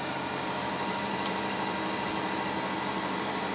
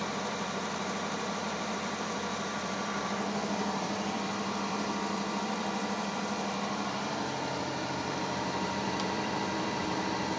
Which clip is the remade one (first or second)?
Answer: second